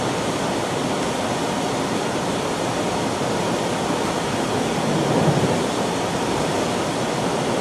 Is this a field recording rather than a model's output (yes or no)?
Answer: yes